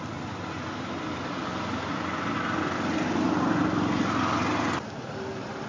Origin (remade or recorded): recorded